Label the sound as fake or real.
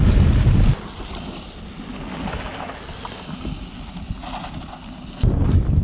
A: real